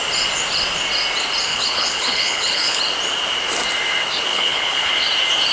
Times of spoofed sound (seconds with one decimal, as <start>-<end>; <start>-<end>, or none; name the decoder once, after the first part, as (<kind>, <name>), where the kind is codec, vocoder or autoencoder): 1.5-2.8 (codec, HILCodec); 4.3-4.9